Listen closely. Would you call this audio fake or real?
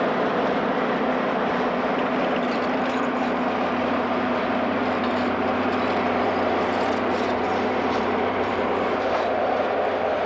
fake